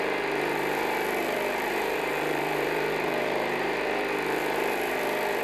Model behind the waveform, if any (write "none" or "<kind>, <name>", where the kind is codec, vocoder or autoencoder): vocoder, BigVGAN v2